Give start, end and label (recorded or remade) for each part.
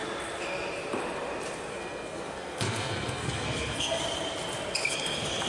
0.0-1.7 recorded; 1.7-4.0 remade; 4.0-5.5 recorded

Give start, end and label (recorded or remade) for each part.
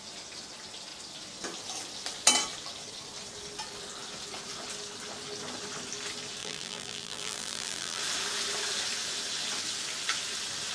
0.0-6.4 recorded; 6.4-8.0 remade; 8.0-10.7 recorded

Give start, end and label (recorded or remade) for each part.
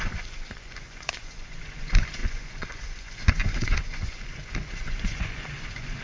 0.0-6.0 remade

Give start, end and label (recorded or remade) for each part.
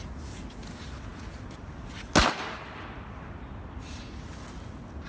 0.0-5.1 recorded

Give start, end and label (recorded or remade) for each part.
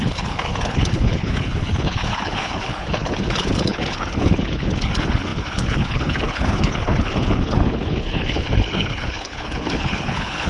0.0-10.5 remade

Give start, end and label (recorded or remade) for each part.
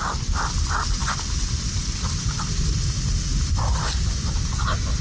0.0-5.0 remade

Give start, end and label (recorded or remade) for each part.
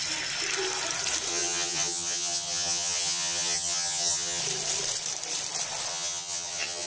0.0-1.3 recorded; 1.3-4.4 remade; 4.4-5.9 recorded; 5.9-6.9 remade